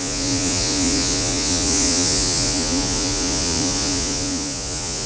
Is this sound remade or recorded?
remade